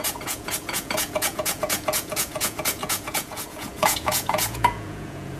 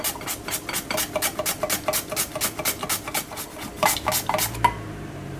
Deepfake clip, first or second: first